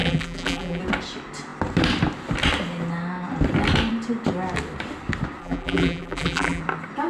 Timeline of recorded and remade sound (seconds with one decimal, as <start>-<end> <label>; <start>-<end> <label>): 0.0-0.8 remade; 0.8-5.4 recorded; 5.4-6.6 remade; 6.6-7.1 recorded